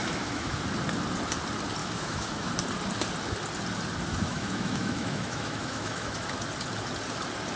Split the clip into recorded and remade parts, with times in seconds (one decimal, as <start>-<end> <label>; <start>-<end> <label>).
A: 0.0-0.6 remade; 0.6-1.8 recorded; 1.8-2.5 remade; 2.5-4.1 recorded; 4.1-6.3 remade; 6.3-7.6 recorded